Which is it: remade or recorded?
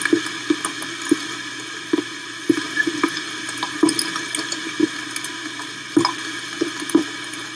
recorded